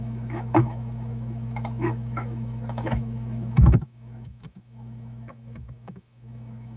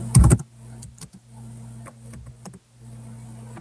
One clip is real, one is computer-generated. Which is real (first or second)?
second